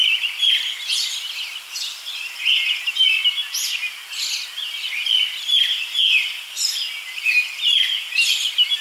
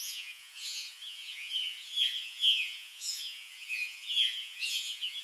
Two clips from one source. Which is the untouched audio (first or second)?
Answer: first